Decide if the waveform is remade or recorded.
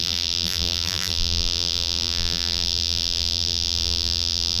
remade